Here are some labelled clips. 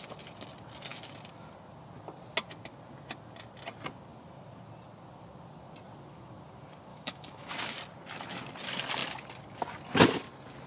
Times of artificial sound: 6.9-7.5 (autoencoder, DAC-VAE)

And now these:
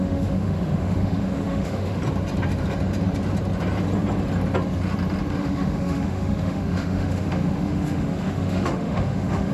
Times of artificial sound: 0.0-2.0 (autoencoder, DAC-VAE); 5.3-9.5